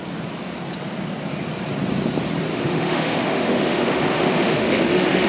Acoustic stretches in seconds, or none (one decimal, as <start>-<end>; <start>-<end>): 0.0-2.5